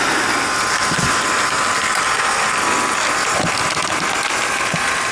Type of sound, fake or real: real